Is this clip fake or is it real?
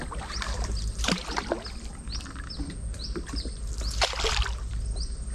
real